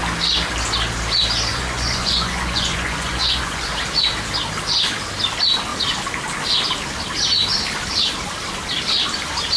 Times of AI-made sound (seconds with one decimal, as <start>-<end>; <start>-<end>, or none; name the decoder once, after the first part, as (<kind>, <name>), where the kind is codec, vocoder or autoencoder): 1.5-3.7 (vocoder, Vocos)